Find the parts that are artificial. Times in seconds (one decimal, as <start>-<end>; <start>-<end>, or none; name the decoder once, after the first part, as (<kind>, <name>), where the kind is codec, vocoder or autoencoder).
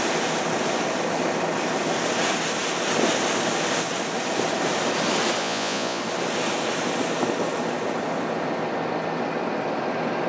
5.4-6.0 (vocoder, Vocos)